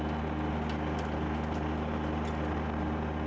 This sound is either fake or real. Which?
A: real